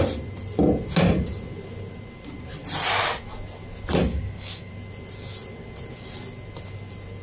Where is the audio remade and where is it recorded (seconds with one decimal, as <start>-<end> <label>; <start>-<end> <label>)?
0.0-4.0 recorded; 4.0-4.7 remade; 4.7-7.2 recorded